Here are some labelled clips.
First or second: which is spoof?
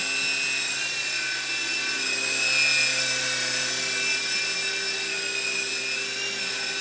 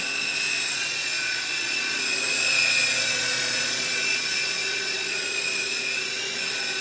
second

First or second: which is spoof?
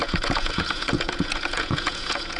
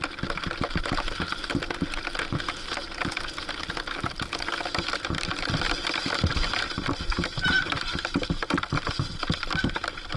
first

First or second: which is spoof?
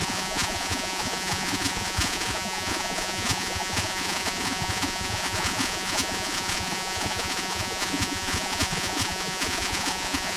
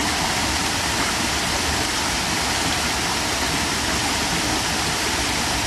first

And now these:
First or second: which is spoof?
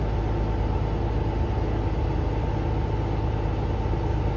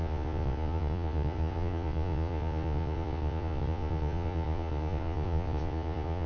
second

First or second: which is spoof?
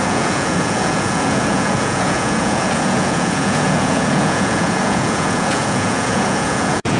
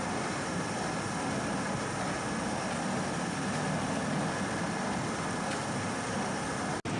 first